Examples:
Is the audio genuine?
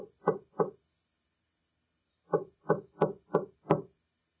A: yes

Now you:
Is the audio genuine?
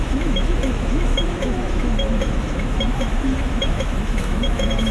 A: no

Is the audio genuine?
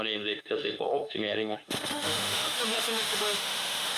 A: no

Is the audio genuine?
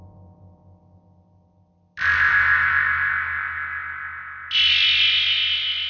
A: yes